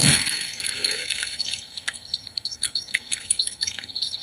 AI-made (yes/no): yes